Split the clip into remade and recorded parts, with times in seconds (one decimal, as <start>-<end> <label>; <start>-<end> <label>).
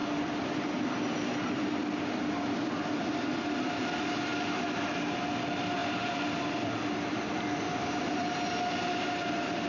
0.0-0.7 remade; 0.7-1.8 recorded; 1.8-3.4 remade; 3.4-4.3 recorded; 4.3-5.0 remade; 5.0-5.8 recorded; 5.8-8.4 remade; 8.4-9.7 recorded